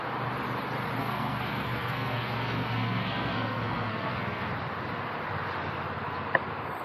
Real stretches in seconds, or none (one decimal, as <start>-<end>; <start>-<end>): 0.0-1.0; 4.5-6.8